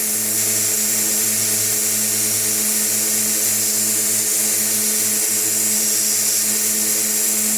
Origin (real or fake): real